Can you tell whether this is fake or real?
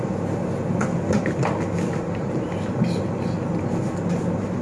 real